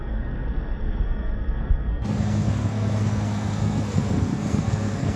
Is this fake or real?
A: fake